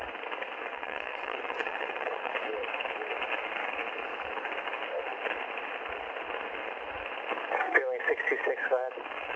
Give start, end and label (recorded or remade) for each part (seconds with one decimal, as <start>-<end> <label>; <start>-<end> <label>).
0.0-0.7 recorded; 0.7-2.3 remade; 2.3-9.4 recorded